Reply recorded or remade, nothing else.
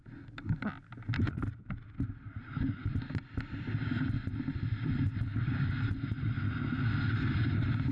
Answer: recorded